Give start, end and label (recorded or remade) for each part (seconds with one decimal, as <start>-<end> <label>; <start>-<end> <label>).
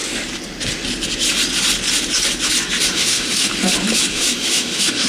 0.0-2.9 recorded; 2.9-3.5 remade; 3.5-4.1 recorded; 4.1-5.1 remade